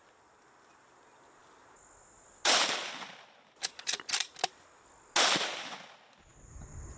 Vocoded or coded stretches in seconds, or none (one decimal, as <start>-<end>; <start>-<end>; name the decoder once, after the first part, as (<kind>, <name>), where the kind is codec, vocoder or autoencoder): none